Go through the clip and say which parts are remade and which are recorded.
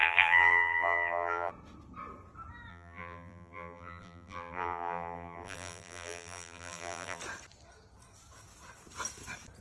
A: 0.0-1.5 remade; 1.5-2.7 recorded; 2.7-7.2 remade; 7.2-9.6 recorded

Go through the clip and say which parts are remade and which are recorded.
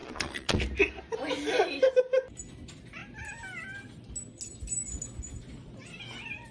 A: 0.0-0.6 remade; 0.6-6.5 recorded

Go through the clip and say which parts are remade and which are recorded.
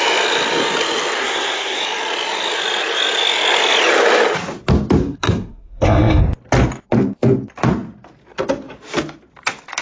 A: 0.0-1.2 recorded; 1.2-1.8 remade; 1.8-5.0 recorded; 5.0-6.2 remade; 6.2-9.8 recorded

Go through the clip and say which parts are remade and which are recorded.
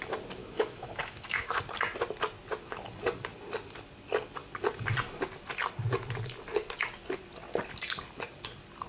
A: 0.0-0.4 recorded; 0.4-1.6 remade; 1.6-8.9 recorded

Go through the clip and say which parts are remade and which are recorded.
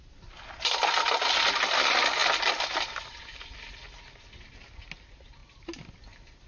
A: 0.0-6.5 recorded